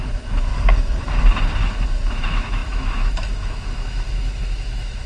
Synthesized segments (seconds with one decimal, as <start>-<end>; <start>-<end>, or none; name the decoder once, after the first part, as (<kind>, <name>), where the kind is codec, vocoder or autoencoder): 0.0-0.5 (autoencoder, DAC-VAE); 2.1-5.1